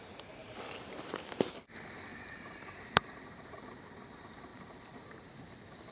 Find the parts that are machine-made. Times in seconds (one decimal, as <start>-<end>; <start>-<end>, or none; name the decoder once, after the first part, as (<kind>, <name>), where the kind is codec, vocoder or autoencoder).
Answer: 0.4-1.2 (vocoder, BigVGAN v2); 2.1-3.0; 4.5-5.5